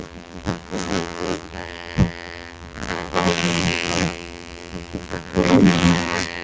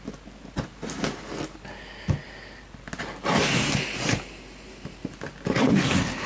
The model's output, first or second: first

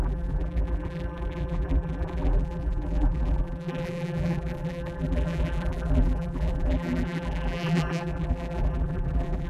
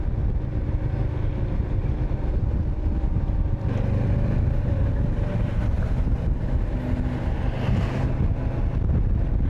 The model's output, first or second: first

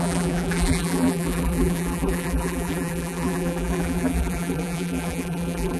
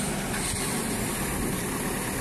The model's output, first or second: first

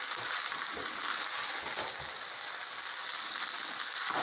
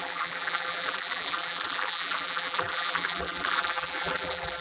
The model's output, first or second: second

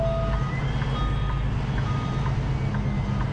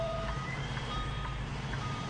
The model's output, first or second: second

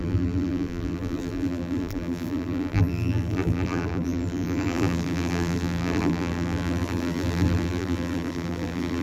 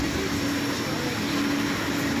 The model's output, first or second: first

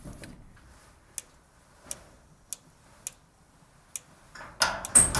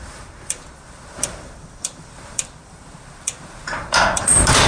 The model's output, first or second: second